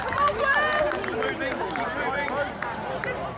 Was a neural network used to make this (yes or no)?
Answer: no